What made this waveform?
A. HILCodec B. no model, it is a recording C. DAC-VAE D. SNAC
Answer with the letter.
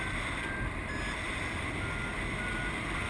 B